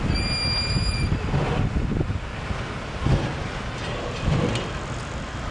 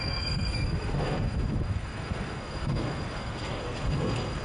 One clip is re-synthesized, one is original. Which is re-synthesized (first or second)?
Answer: second